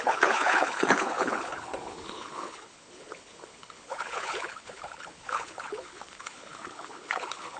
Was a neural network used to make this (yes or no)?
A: yes